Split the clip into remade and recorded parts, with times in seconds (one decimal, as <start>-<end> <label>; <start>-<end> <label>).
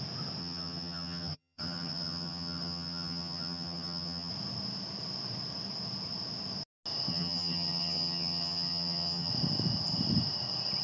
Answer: 0.0-0.4 recorded; 0.4-4.3 remade; 4.3-7.1 recorded; 7.1-9.3 remade; 9.3-10.8 recorded